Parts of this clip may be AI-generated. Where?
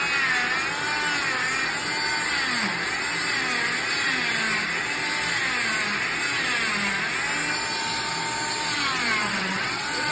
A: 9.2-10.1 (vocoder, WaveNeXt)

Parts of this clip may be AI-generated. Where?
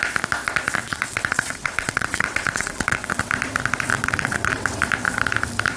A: 0.8-3.2 (vocoder, WaveNeXt); 3.9-4.8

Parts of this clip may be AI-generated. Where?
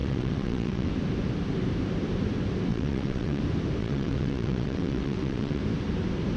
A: 0.0-0.9 (vocoder, WaveNeXt); 2.7-3.4; 3.8-5.6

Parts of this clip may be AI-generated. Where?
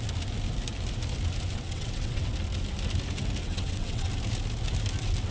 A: 1.5-2.3 (vocoder, WaveNeXt); 3.4-4.1